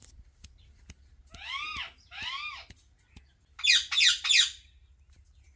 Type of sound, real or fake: real